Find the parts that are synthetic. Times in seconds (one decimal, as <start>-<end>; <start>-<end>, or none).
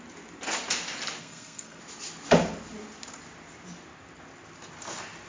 1.2-1.8